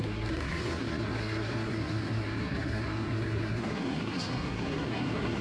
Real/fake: fake